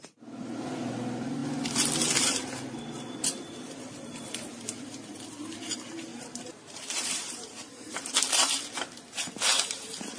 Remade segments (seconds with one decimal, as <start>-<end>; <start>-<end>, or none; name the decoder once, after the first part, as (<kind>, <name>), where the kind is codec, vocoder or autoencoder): 5.0-5.5 (vocoder, BigVGAN v2); 6.1-8.0